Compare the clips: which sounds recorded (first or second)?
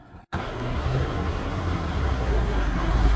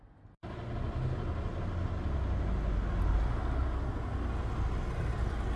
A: second